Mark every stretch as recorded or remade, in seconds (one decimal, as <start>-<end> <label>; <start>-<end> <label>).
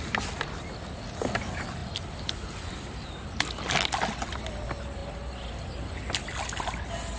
0.0-7.2 recorded